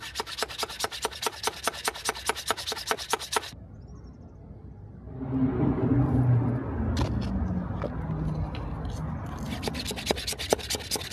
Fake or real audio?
real